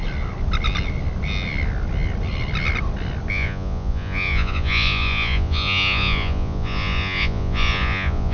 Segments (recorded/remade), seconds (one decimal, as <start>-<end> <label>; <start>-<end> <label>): 0.0-3.3 recorded; 3.3-8.3 remade

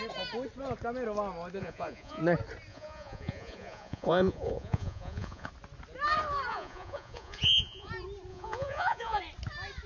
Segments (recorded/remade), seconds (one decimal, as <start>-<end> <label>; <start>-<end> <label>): 0.0-1.6 recorded; 1.6-2.2 remade; 2.2-2.7 recorded; 2.7-5.5 remade; 5.5-6.5 recorded; 6.5-7.9 remade; 7.9-8.3 recorded; 8.3-9.2 remade; 9.2-9.9 recorded

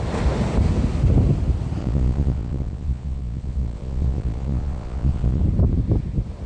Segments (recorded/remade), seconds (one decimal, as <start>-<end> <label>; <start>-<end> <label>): 0.0-1.8 recorded; 1.8-5.4 remade; 5.4-6.5 recorded

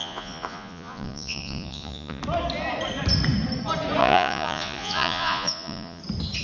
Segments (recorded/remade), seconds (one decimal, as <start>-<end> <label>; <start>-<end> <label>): 0.0-2.2 remade; 2.2-4.0 recorded; 4.0-6.0 remade; 6.0-6.4 recorded

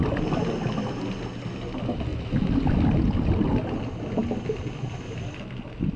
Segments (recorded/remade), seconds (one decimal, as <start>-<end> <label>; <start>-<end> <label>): 0.0-6.0 recorded